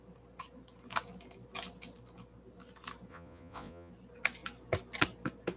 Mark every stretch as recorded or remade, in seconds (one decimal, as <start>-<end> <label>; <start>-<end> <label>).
0.0-3.1 recorded; 3.1-3.9 remade; 3.9-5.6 recorded